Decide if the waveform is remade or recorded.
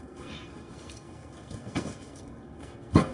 remade